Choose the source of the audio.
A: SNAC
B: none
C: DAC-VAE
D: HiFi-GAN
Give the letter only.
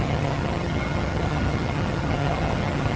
D